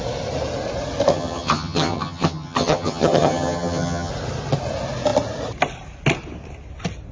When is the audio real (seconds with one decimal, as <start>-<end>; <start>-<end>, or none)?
0.0-1.1; 4.1-7.1